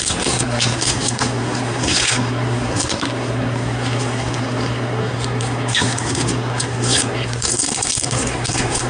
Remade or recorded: remade